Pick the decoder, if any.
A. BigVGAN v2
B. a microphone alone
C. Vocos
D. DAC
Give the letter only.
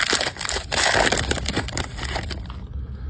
B